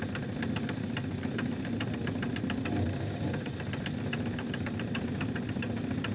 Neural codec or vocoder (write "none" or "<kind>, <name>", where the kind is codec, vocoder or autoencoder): none